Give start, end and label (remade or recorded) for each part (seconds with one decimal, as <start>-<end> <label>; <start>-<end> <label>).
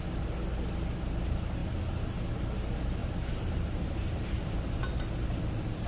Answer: 0.0-3.0 recorded; 3.0-4.5 remade; 4.5-5.9 recorded